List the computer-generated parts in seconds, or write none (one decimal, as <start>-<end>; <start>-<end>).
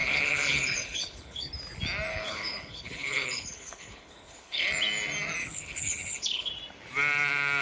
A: 0.0-1.5; 2.1-4.7; 5.4-6.5